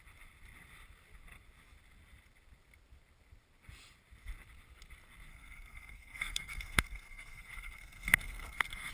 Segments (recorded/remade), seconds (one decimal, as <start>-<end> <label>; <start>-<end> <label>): 0.0-5.3 recorded; 5.3-8.9 remade